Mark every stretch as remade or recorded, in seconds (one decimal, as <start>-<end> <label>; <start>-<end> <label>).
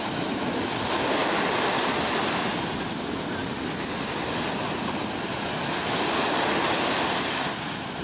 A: 0.0-8.0 recorded